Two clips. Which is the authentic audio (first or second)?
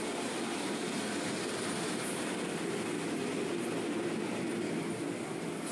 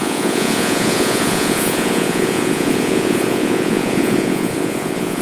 first